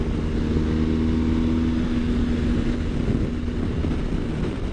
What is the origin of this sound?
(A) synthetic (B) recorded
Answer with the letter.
B